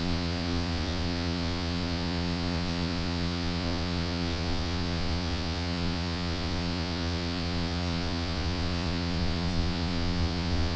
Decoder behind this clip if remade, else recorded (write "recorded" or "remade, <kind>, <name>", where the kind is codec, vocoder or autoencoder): remade, vocoder, Vocos